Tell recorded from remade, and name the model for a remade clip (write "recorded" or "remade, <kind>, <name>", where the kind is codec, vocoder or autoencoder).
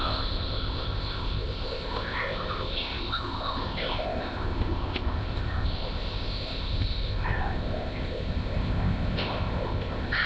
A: remade, codec, ZipCodec